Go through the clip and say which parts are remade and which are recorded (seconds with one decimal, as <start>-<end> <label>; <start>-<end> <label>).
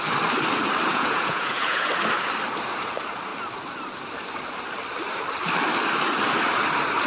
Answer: 0.0-0.9 recorded; 0.9-1.9 remade; 1.9-7.1 recorded